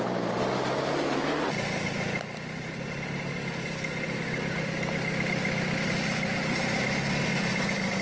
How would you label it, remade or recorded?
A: recorded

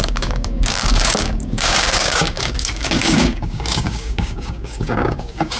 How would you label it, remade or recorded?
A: remade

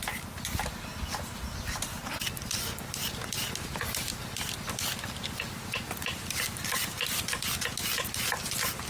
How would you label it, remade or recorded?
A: recorded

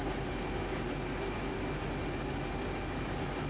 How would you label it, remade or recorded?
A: recorded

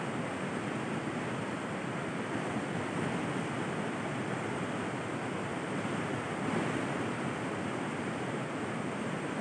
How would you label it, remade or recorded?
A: recorded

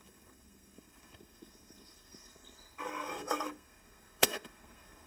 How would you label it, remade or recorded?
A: remade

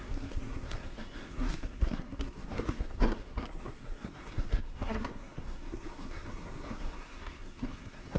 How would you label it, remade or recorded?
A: remade